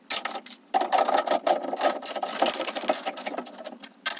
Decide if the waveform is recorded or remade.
recorded